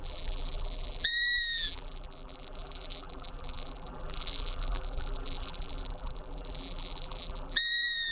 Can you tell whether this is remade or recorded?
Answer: remade